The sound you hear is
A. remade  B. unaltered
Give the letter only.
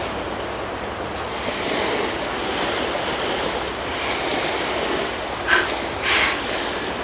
B